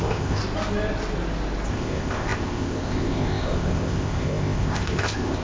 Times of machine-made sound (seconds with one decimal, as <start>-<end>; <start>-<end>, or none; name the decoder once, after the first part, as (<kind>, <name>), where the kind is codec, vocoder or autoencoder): 0.0-0.4 (codec, ZipCodec); 1.7-5.4